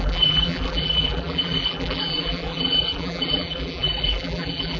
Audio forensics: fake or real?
fake